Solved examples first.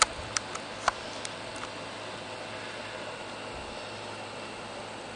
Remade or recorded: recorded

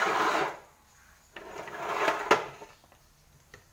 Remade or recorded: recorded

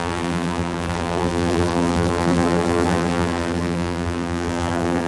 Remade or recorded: remade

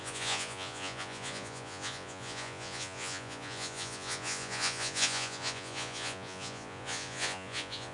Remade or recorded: remade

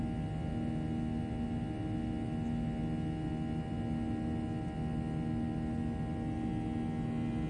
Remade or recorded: recorded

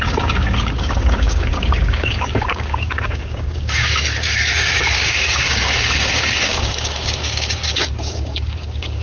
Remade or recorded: remade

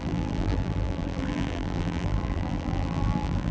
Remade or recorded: remade